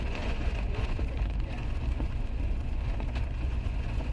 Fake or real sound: fake